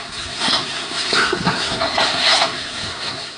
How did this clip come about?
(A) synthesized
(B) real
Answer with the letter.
A